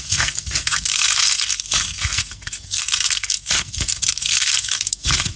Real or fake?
fake